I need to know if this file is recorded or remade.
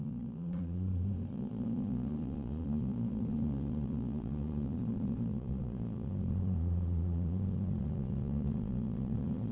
remade